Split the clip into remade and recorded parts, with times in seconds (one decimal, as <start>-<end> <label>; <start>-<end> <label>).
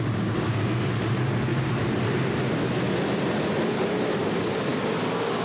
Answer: 0.0-1.5 recorded; 1.5-2.3 remade; 2.3-5.4 recorded